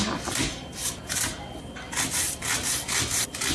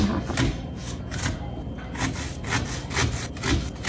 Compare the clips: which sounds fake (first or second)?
first